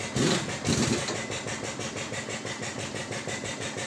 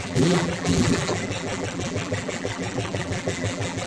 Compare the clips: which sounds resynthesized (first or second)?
second